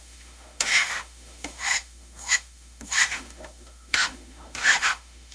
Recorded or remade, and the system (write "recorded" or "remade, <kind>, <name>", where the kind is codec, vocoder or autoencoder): remade, autoencoder, DAC-VAE